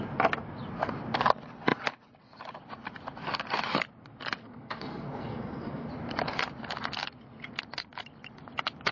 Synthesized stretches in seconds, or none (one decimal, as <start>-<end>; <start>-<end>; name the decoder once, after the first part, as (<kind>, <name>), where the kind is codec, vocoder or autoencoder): 4.4-5.9 (codec, SNAC)